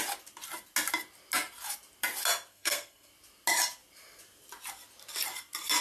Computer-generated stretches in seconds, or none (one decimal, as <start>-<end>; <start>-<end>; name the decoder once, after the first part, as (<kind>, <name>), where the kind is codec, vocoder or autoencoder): 2.5-3.1 (codec, SNAC)